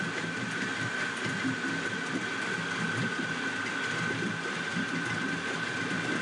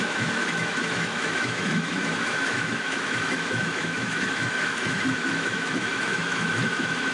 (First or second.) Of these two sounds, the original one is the first